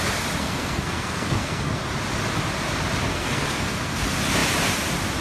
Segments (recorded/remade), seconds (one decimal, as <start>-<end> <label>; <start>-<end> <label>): 0.0-0.4 recorded; 0.4-1.8 remade; 1.8-3.1 recorded; 3.1-4.0 remade; 4.0-5.2 recorded